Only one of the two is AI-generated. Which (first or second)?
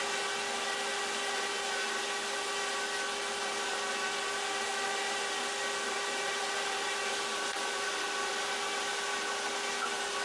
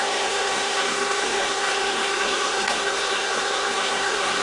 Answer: second